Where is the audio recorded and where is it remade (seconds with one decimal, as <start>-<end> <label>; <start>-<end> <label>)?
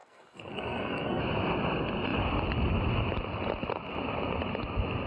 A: 0.0-1.2 remade; 1.2-5.1 recorded